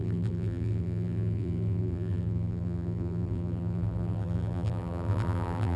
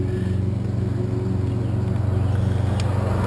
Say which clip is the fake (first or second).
first